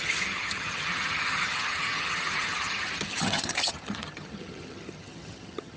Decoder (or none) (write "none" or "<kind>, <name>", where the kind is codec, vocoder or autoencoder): vocoder, HiFi-GAN